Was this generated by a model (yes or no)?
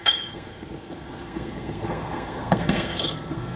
yes